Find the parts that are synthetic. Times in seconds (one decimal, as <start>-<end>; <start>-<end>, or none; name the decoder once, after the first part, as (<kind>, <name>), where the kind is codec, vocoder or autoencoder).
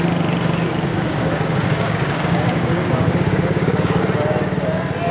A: 0.9-4.0 (codec, DAC)